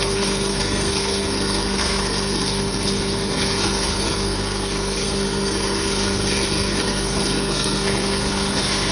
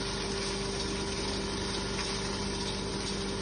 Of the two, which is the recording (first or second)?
second